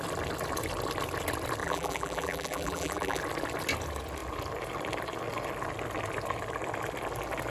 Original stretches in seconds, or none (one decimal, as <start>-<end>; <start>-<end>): 0.0-1.6; 3.2-7.5